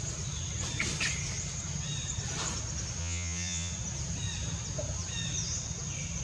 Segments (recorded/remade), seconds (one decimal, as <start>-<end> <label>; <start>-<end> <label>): 0.0-3.0 recorded; 3.0-3.7 remade; 3.7-6.2 recorded